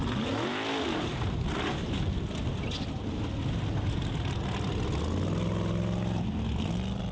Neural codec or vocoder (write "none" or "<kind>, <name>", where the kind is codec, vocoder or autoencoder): none